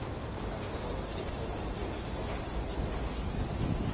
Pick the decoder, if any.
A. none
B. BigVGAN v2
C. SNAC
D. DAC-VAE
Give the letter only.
A